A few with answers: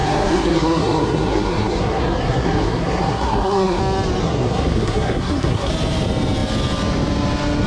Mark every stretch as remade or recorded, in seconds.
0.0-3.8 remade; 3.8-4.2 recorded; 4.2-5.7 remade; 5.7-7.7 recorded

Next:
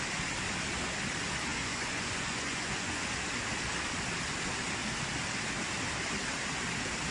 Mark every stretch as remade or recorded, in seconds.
0.0-1.5 recorded; 1.5-3.0 remade; 3.0-7.1 recorded

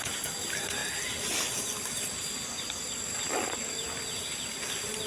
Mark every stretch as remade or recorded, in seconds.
0.0-5.1 recorded

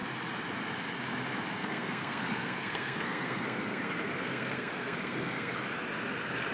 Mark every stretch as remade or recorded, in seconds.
0.0-1.6 recorded; 1.6-5.5 remade; 5.5-6.5 recorded